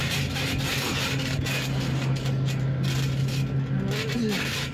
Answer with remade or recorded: recorded